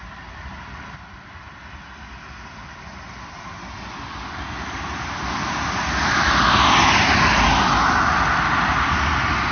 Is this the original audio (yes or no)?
yes